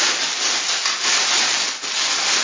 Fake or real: real